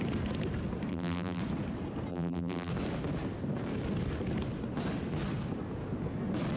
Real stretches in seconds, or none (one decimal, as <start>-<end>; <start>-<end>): 0.0-0.9; 1.4-2.1; 2.7-6.6